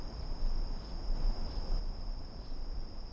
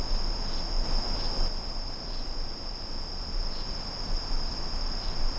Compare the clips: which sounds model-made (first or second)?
first